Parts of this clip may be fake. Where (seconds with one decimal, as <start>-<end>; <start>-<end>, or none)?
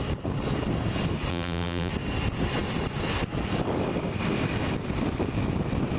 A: 1.3-1.9